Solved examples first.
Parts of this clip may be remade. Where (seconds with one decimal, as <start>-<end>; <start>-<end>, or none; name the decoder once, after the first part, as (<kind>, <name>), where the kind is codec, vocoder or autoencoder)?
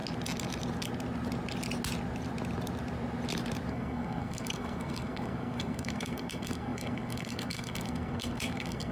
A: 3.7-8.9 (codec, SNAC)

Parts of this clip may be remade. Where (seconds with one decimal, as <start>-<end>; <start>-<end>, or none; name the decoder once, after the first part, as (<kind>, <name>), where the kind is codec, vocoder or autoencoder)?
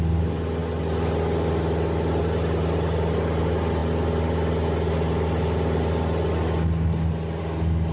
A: none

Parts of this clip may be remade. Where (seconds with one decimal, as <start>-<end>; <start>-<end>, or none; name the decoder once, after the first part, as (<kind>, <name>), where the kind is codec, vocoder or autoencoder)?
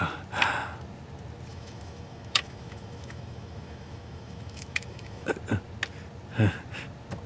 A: 1.5-5.3 (autoencoder, DAC-VAE)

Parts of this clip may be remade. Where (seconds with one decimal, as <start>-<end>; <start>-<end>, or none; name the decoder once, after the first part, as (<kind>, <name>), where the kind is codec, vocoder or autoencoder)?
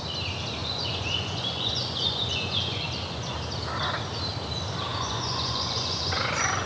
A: 0.6-3.4 (vocoder, Vocos); 4.9-6.7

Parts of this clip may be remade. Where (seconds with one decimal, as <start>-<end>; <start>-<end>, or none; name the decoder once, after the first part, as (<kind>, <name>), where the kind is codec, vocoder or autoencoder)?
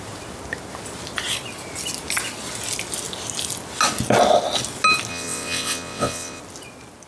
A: 5.1-6.4 (vocoder, WaveNeXt)